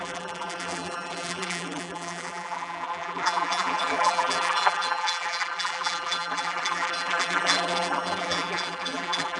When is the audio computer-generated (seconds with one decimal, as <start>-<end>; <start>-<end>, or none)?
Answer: 0.0-9.4